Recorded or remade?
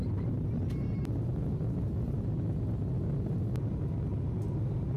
recorded